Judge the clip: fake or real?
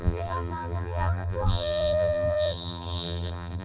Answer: fake